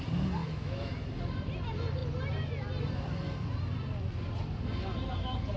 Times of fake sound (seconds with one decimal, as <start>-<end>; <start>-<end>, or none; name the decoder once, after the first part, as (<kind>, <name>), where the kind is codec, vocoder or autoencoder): 0.4-0.9 (autoencoder, DAC-VAE)